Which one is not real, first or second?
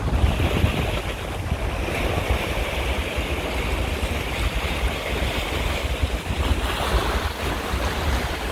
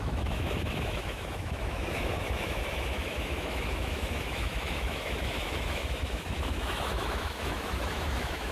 second